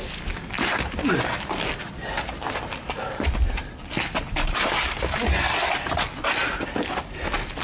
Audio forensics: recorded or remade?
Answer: recorded